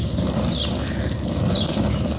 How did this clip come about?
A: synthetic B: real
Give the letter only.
B